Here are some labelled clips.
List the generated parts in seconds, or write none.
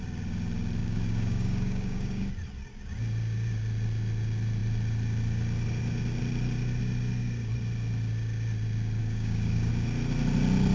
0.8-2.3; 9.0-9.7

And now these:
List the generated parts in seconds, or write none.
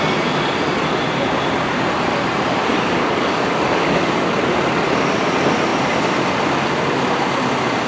2.7-4.3